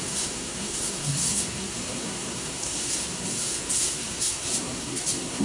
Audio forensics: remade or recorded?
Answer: remade